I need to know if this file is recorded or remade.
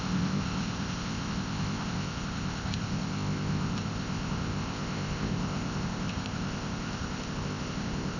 remade